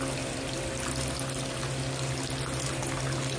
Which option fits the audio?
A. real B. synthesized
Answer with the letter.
A